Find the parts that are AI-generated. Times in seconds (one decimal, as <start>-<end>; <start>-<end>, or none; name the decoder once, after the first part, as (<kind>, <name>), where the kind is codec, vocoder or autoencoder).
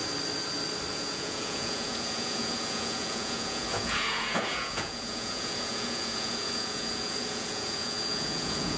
0.9-8.8 (vocoder, Vocos)